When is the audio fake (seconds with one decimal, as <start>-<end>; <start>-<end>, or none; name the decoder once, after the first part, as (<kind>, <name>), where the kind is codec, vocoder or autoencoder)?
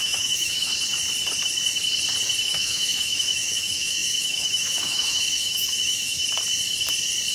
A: 0.0-0.7 (autoencoder, DAC-VAE); 2.4-6.2